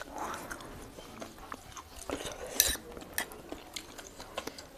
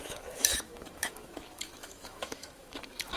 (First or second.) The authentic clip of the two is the first